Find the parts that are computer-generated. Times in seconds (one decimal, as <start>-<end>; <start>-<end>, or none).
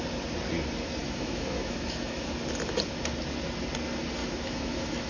1.0-2.3; 4.2-5.1